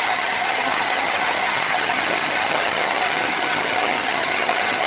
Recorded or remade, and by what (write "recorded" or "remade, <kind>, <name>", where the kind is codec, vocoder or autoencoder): remade, vocoder, HiFi-GAN